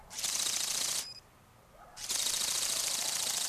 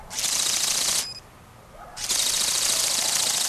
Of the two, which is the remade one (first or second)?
first